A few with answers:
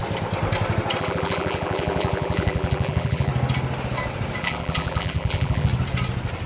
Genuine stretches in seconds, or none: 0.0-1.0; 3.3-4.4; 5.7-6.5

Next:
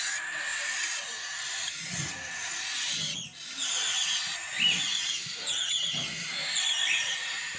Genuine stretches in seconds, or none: 0.0-0.5; 2.6-6.4